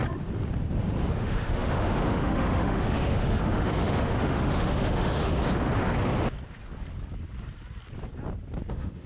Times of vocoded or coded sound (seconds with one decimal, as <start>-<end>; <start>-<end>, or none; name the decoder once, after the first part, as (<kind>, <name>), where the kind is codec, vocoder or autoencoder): 1.1-5.4 (autoencoder, DAC-VAE); 8.7-9.1